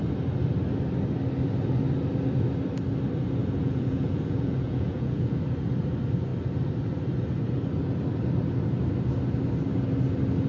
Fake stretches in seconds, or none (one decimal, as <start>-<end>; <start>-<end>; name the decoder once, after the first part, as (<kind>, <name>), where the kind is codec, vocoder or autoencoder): 3.4-5.4 (vocoder, Vocos)